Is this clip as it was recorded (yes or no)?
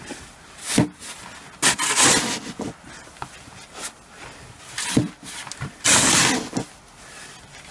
yes